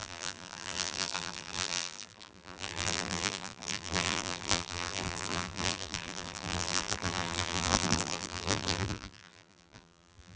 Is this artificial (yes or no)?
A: yes